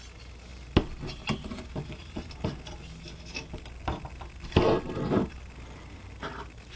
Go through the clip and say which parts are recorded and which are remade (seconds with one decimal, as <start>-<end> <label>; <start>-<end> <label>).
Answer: 0.0-6.8 recorded